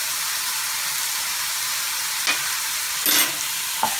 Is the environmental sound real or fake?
real